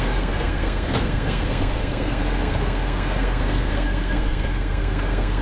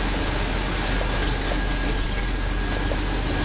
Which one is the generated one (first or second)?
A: first